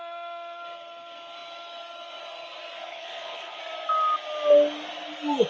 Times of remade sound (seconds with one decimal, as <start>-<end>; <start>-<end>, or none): 2.9-3.6